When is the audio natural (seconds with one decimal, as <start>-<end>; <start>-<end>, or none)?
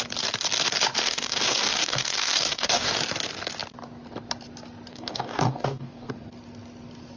0.0-1.0; 3.0-4.9; 6.1-7.2